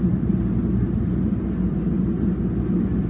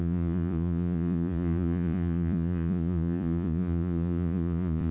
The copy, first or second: second